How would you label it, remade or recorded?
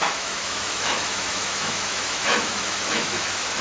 remade